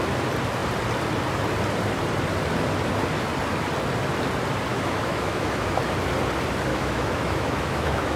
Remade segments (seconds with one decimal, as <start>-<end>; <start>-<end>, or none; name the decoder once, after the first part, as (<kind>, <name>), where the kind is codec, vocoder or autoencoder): 4.7-5.8 (autoencoder, DAC-VAE); 6.7-8.2